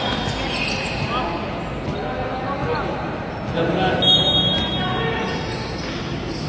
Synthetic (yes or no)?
no